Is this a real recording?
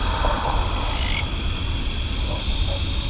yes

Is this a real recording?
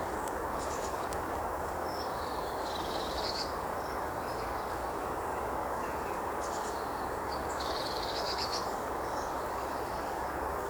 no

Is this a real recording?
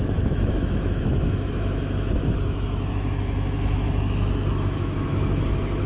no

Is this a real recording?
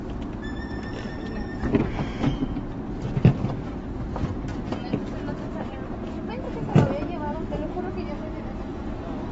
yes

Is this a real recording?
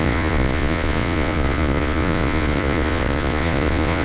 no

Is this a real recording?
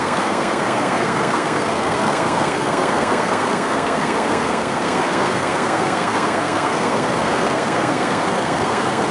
no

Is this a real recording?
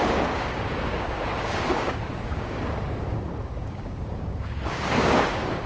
no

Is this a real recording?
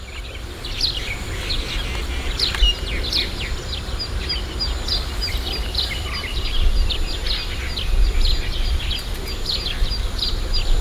yes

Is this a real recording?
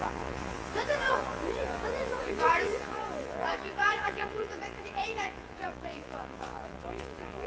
no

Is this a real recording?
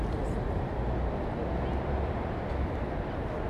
yes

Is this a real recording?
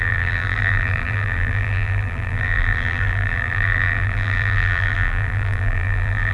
no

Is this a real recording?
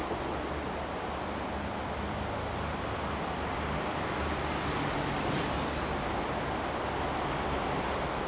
yes